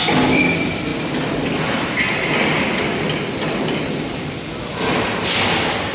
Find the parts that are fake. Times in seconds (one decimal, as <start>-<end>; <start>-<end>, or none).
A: none